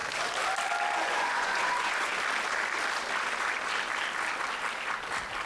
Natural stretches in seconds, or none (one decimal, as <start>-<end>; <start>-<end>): 0.0-1.0; 2.1-5.5